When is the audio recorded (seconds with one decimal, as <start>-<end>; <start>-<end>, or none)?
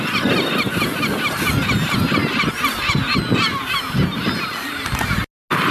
0.0-5.7